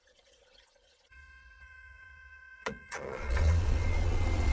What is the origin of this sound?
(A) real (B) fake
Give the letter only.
B